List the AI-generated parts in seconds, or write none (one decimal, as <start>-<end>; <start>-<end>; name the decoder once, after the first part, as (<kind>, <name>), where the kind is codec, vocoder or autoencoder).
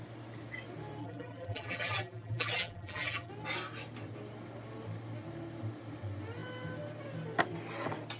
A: 1.0-3.3 (vocoder, BigVGAN v2)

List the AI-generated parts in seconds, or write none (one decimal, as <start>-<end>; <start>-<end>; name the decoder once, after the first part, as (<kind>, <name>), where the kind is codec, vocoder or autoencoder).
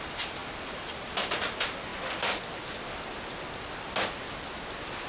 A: 0.0-1.9 (vocoder, BigVGAN v2)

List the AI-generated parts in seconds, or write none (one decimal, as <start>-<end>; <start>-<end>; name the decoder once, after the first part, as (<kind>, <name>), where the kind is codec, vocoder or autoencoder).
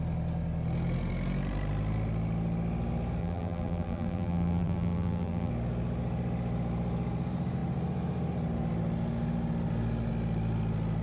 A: 3.2-5.5 (vocoder, BigVGAN v2)